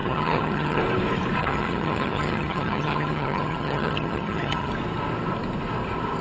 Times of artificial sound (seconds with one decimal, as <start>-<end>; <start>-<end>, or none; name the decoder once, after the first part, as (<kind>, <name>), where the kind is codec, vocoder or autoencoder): 0.0-0.8 (vocoder, HiFi-GAN); 1.4-4.7